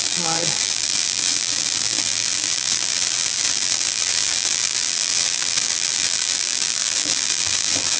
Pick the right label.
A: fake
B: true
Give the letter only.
A